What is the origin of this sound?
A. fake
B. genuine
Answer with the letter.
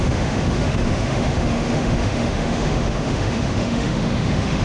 A